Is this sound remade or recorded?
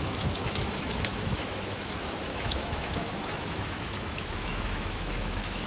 remade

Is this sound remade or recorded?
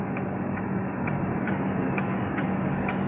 remade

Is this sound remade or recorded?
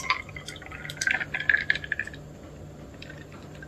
recorded